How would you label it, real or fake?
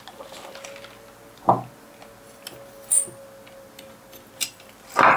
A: real